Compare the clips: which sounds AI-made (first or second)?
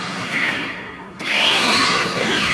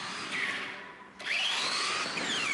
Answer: first